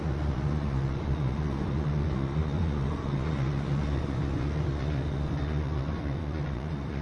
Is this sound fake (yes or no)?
yes